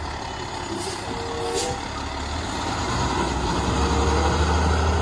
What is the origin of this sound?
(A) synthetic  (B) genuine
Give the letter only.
B